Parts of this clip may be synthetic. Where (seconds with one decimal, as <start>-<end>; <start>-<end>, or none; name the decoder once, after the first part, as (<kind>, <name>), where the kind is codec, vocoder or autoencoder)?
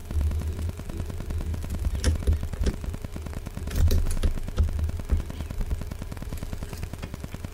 0.0-0.5 (vocoder, BigVGAN v2); 1.5-2.2